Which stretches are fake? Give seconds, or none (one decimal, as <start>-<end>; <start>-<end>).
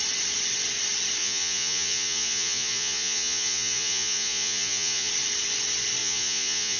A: 1.2-5.1; 6.0-6.8